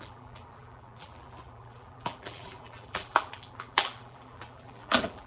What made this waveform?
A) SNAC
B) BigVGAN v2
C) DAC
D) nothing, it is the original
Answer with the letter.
B